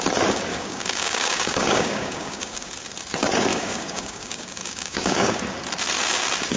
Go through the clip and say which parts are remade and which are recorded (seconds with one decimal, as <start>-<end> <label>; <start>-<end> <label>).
0.0-0.5 recorded; 0.5-2.7 remade; 2.7-3.5 recorded; 3.5-5.4 remade; 5.4-6.6 recorded